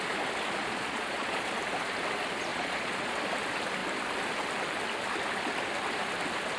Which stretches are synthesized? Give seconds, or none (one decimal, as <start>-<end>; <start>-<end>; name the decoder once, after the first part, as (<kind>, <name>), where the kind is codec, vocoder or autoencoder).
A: 0.6-1.5 (vocoder, Vocos); 2.5-3.2